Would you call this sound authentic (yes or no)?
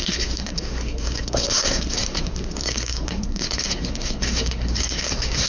no